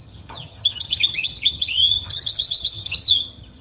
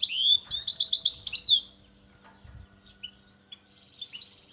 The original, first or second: second